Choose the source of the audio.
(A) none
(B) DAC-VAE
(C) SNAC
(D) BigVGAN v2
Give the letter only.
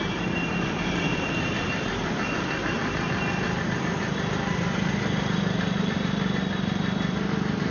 D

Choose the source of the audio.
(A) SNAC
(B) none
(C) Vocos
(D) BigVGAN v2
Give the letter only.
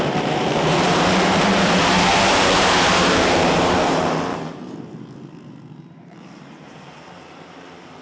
D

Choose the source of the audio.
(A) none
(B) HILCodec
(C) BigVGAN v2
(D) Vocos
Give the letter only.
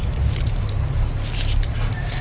A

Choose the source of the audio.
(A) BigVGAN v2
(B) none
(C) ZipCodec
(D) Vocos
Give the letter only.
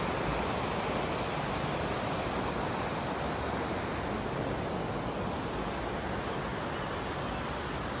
B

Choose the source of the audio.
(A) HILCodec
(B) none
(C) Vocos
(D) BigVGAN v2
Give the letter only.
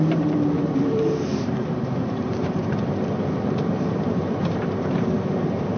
D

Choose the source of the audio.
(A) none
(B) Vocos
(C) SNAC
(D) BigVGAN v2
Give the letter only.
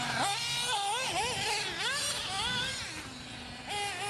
A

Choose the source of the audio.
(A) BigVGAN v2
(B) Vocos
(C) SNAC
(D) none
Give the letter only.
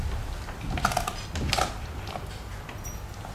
D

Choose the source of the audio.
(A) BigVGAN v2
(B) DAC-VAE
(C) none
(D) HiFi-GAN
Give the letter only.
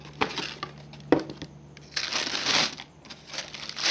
C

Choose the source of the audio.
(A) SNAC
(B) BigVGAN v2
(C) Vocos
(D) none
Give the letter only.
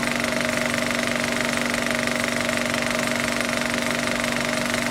D